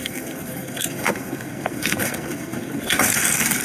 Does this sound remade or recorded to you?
remade